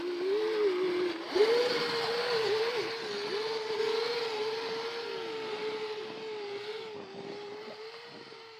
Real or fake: real